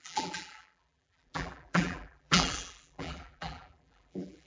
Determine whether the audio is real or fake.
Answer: fake